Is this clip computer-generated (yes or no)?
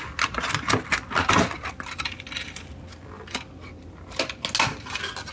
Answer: no